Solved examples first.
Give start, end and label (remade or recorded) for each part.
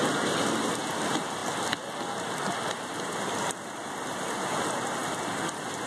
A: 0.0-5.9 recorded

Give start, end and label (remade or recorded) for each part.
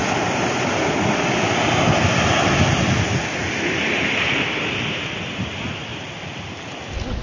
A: 0.0-0.6 remade; 0.6-5.9 recorded; 5.9-6.8 remade; 6.8-7.2 recorded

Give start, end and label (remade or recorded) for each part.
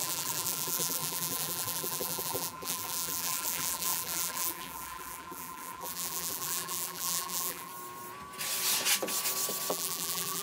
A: 0.0-7.7 remade; 7.7-9.7 recorded; 9.7-10.4 remade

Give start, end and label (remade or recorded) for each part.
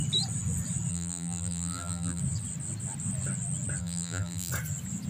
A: 0.0-0.9 recorded; 0.9-2.2 remade; 2.2-3.8 recorded; 3.8-4.5 remade; 4.5-5.1 recorded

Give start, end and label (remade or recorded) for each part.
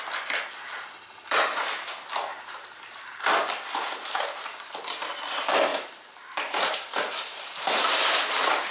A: 0.0-2.3 recorded; 2.3-3.3 remade; 3.3-5.7 recorded; 5.7-6.8 remade; 6.8-8.7 recorded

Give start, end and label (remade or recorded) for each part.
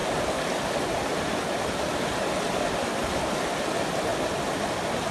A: 0.0-3.1 recorded; 3.1-4.1 remade; 4.1-5.1 recorded